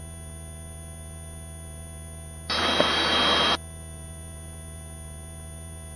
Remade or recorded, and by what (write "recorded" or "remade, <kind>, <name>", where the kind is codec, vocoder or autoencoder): recorded